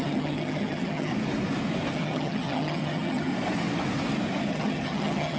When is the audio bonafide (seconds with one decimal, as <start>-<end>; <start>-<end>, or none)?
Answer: 1.1-1.9; 3.3-4.5